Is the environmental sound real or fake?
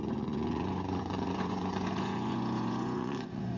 fake